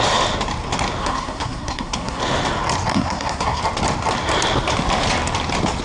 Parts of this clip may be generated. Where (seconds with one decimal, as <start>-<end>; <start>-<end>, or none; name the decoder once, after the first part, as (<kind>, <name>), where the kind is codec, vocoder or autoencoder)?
1.0-2.2 (codec, SNAC); 2.9-3.6